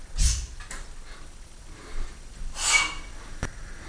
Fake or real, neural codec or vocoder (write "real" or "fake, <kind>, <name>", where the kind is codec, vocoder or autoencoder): real